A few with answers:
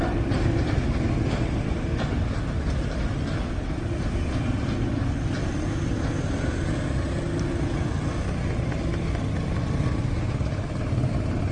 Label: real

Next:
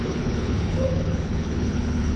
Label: fake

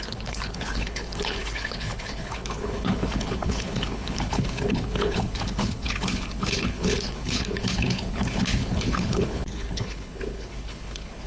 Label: fake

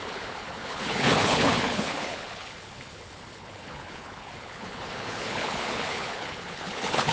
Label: fake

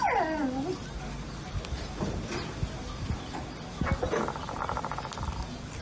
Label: real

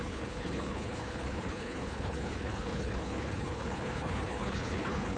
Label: fake